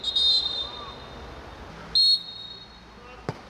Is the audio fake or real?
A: real